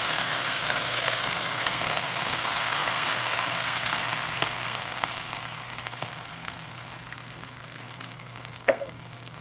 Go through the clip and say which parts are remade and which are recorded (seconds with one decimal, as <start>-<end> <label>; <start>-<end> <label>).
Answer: 0.0-9.4 remade